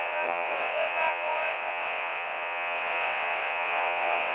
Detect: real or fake fake